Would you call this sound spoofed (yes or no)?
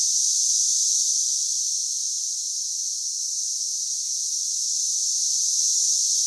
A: no